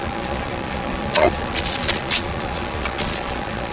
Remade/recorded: remade